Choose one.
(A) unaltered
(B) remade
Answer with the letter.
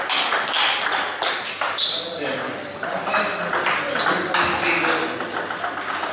A